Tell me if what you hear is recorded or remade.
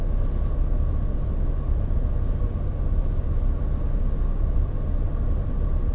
recorded